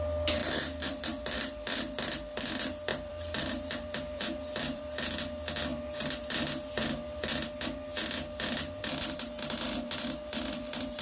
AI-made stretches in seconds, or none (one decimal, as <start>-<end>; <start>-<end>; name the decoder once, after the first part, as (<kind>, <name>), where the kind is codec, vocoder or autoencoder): 2.9-4.8 (vocoder, BigVGAN v2)